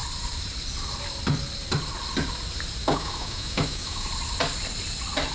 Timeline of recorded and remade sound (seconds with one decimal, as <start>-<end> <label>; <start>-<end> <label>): 0.0-2.8 recorded; 2.8-4.1 remade; 4.1-5.3 recorded